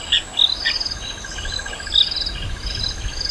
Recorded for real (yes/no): yes